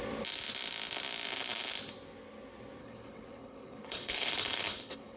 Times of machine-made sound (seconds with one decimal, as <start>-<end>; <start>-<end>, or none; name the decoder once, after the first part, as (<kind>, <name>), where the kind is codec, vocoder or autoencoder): 2.8-5.2 (codec, HILCodec)